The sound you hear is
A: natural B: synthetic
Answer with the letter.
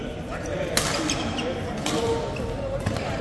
A